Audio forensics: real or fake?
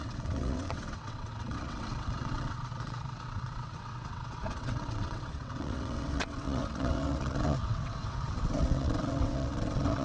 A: fake